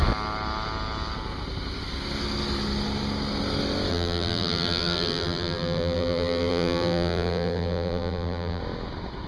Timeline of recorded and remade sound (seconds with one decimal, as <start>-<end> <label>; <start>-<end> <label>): 0.0-3.9 recorded; 3.9-8.6 remade; 8.6-9.3 recorded